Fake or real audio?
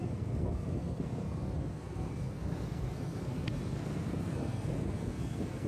fake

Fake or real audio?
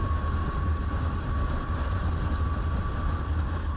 real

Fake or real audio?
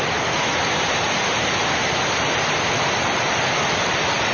real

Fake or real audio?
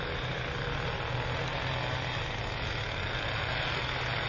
real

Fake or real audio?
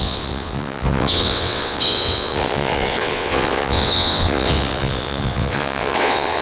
fake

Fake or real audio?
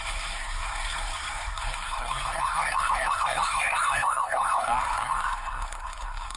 fake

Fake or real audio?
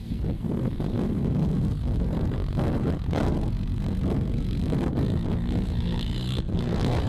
fake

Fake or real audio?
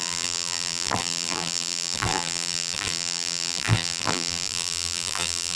fake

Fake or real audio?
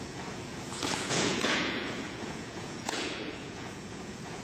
fake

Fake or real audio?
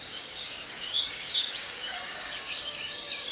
fake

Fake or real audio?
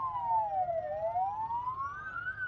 real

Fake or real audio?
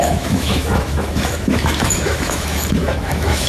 fake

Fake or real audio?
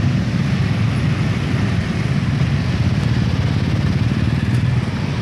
real